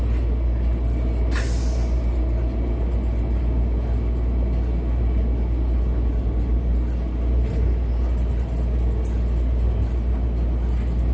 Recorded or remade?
recorded